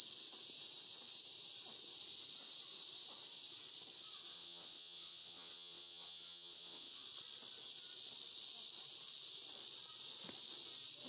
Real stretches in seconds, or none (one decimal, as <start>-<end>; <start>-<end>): 0.0-4.3; 7.0-11.1